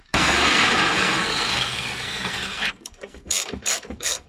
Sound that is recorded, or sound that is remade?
remade